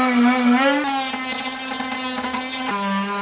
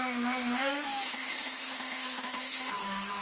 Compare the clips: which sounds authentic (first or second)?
first